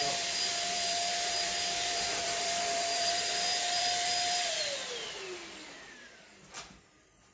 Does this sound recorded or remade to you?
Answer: remade